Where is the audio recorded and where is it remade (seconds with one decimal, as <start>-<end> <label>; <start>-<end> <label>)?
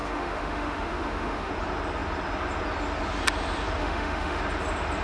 0.0-1.5 remade; 1.5-3.8 recorded; 3.8-4.4 remade; 4.4-5.0 recorded